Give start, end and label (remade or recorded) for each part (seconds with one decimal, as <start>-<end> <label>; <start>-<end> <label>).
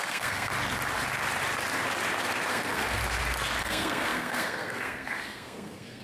0.0-0.5 remade; 0.5-2.5 recorded; 2.5-3.0 remade; 3.0-3.6 recorded; 3.6-6.0 remade